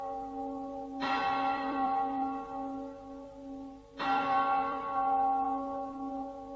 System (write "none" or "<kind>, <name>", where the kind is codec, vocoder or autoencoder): vocoder, BigVGAN v2